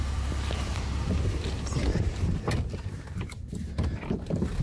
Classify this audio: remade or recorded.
remade